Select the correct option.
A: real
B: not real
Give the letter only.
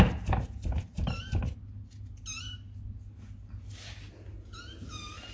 A